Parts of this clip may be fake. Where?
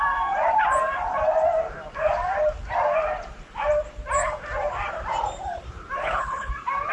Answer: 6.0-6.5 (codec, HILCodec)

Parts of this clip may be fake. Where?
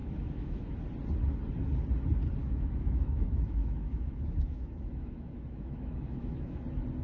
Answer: 0.0-0.8 (autoencoder, DAC-VAE); 2.4-6.6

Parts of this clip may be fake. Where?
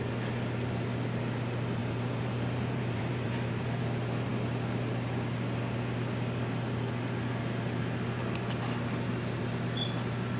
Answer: 1.8-3.8 (vocoder, BigVGAN v2)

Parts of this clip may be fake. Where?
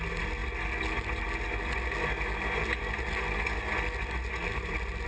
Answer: none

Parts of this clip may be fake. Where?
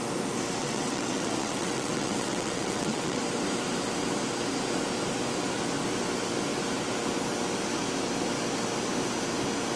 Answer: 0.6-3.2 (vocoder, WaveNeXt)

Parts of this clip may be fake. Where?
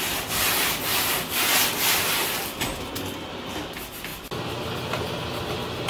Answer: none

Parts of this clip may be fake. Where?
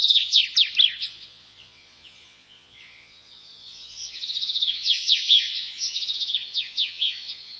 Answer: 0.0-0.4 (vocoder, Vocos); 1.0-7.6